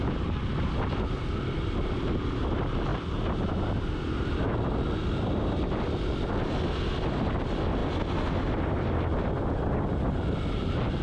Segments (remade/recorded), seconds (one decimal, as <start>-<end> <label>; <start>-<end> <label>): 0.0-11.0 recorded